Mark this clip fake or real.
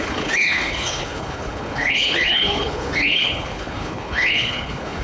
fake